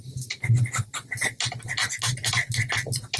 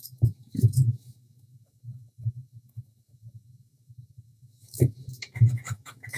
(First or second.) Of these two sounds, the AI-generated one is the second